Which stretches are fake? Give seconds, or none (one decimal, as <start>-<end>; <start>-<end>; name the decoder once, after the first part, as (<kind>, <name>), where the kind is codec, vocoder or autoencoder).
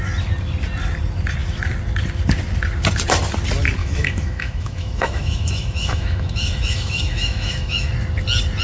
3.8-7.9 (autoencoder, DAC-VAE)